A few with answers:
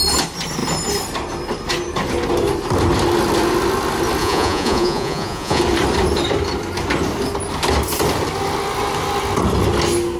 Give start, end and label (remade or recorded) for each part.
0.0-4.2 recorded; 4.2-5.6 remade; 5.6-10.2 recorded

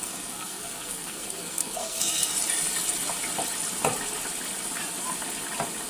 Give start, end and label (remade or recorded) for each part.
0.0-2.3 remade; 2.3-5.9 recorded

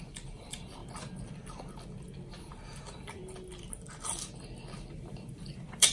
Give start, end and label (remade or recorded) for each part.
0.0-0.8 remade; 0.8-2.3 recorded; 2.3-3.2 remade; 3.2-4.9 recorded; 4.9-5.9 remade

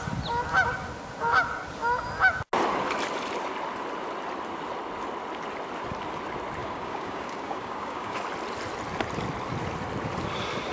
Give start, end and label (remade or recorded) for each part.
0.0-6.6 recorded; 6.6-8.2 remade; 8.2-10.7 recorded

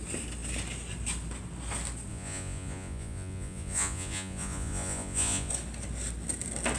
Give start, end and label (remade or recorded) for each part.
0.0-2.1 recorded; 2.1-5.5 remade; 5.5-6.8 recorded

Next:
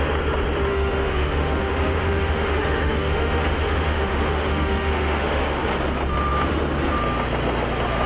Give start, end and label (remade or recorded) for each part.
0.0-0.7 recorded; 0.7-5.6 remade; 5.6-8.1 recorded